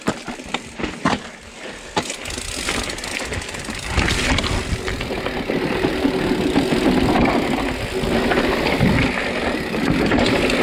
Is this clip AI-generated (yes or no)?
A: no